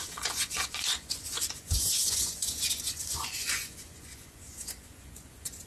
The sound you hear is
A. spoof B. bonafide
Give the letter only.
A